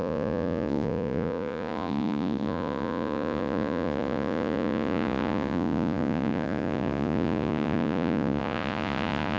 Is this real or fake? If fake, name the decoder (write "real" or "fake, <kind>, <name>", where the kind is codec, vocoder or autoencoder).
fake, vocoder, Vocos